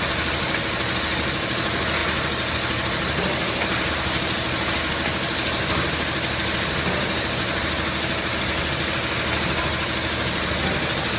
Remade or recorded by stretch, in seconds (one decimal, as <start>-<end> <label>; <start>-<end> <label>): 0.0-11.2 recorded